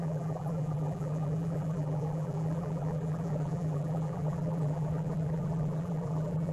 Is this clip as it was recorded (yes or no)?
no